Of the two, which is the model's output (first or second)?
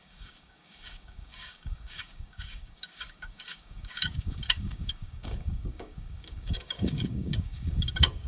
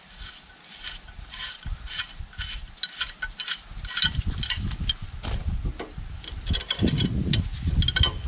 first